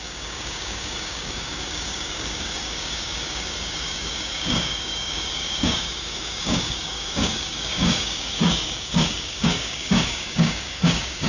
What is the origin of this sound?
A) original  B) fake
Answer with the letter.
B